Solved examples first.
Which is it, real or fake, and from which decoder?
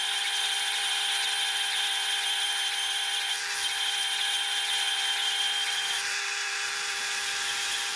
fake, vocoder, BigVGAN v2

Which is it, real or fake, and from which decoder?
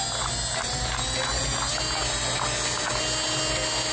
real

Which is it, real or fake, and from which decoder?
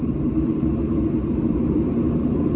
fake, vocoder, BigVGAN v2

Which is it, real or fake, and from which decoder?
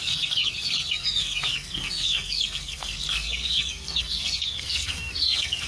fake, codec, SNAC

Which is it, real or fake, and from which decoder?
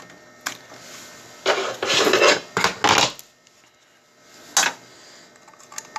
real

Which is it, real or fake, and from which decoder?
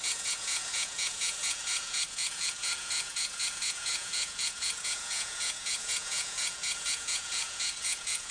fake, vocoder, Vocos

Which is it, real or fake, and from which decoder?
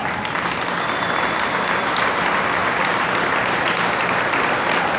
real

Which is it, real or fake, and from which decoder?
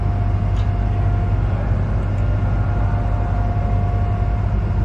real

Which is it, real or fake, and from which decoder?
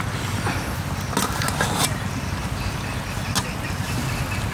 real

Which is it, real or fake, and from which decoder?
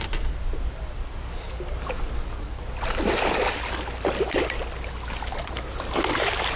real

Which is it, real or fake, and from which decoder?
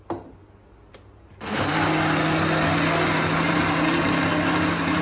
real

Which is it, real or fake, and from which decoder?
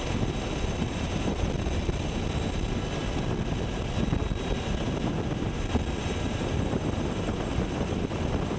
real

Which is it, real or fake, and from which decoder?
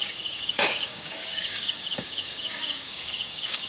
fake, codec, DAC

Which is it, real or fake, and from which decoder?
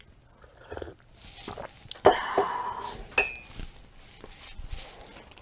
real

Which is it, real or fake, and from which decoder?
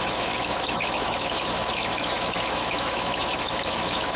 fake, autoencoder, DAC-VAE